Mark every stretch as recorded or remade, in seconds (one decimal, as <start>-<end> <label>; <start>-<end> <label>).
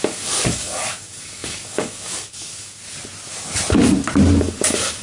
0.0-2.8 remade; 2.8-4.4 recorded; 4.4-5.0 remade